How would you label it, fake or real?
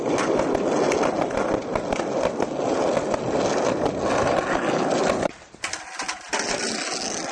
real